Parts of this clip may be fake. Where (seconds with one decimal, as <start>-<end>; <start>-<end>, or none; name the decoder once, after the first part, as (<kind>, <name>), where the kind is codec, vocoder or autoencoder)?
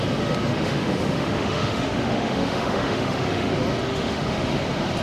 0.5-3.5 (autoencoder, DAC-VAE); 3.9-4.5